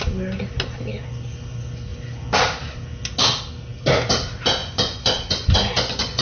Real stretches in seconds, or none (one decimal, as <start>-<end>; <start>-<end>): 0.0-4.6